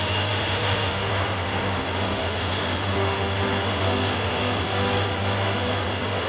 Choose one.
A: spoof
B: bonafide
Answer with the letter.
A